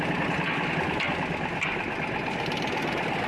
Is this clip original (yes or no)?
yes